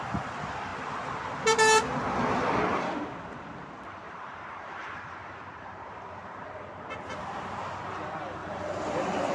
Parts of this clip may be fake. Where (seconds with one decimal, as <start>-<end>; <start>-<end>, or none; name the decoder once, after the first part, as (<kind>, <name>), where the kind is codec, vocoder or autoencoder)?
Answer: 2.7-7.3 (vocoder, BigVGAN v2); 8.4-9.3